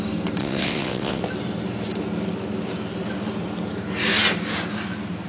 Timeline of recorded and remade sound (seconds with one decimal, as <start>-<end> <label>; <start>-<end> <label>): 0.0-0.4 recorded; 0.4-1.2 remade; 1.2-5.3 recorded